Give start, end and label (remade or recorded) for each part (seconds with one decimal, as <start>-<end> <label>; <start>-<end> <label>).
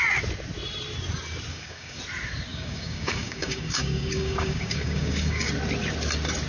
0.0-1.5 recorded; 1.5-2.0 remade; 2.0-2.5 recorded; 2.5-5.5 remade; 5.5-6.5 recorded